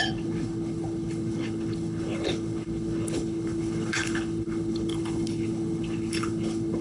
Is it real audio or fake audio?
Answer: fake